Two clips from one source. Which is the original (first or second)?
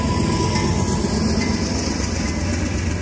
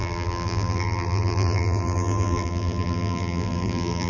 first